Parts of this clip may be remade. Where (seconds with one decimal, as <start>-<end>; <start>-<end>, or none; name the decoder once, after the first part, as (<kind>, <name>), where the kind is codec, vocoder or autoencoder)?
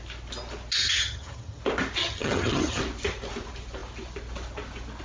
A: 0.8-1.6 (vocoder, HiFi-GAN); 2.0-2.8